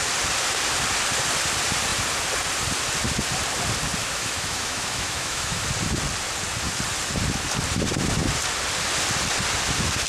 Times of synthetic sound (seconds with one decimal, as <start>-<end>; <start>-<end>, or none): 4.0-5.6